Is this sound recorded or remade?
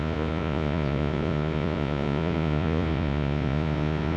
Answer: remade